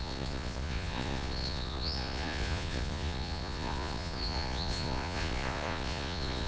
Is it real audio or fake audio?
fake